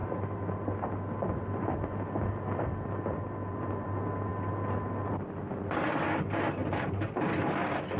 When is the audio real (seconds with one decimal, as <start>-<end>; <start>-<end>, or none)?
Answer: 0.0-8.0